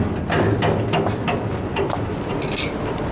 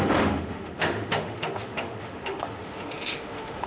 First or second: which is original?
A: first